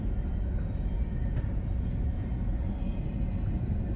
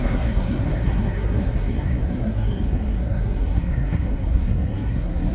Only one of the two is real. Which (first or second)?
first